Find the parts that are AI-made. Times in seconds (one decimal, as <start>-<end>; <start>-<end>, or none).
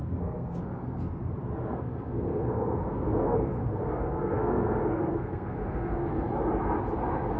0.0-1.2; 1.7-6.1